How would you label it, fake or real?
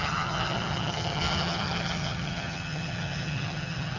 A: fake